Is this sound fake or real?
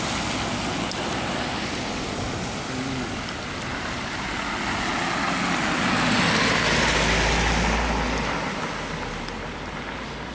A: real